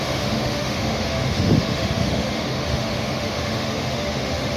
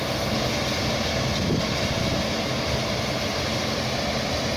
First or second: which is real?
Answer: second